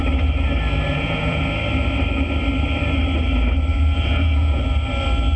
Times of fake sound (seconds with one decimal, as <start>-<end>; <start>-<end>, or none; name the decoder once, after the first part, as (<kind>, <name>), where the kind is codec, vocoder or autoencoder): 0.9-1.4 (vocoder, Vocos); 3.7-4.6